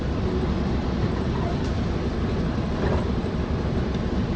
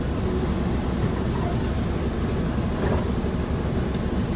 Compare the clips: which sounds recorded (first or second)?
second